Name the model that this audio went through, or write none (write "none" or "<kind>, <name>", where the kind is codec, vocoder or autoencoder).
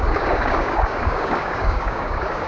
codec, DAC